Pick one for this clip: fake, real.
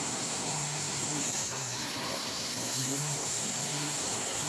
fake